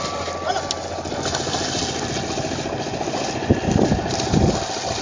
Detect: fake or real real